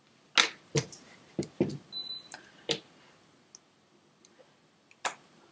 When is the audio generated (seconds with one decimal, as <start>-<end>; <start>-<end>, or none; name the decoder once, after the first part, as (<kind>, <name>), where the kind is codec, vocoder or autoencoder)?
0.7-1.6 (vocoder, BigVGAN v2); 2.0-3.2